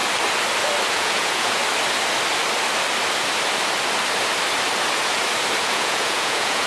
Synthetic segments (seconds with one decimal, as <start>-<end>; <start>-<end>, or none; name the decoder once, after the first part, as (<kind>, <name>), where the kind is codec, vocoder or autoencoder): 0.9-1.6 (vocoder, Vocos); 5.6-6.7